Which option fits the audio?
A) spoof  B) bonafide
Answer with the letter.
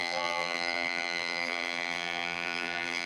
A